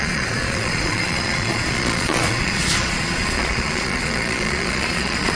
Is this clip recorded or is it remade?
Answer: remade